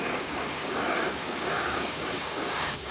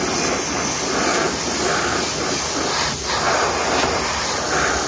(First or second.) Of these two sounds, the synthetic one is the first